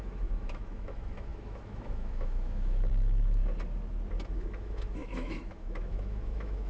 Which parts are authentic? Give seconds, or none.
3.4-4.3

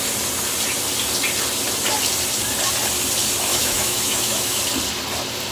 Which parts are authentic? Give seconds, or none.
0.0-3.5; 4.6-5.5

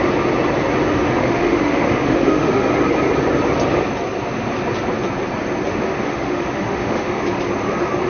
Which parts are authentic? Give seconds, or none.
0.0-0.9; 2.7-5.7; 7.2-8.1